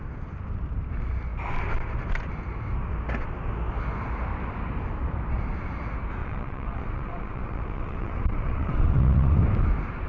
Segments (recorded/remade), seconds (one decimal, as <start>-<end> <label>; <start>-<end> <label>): 0.0-6.2 recorded; 6.2-9.4 remade; 9.4-10.1 recorded